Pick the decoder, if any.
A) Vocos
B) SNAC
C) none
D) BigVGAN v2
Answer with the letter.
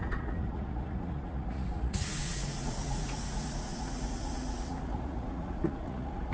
A